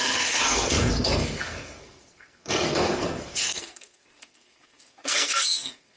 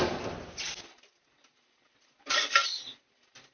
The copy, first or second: first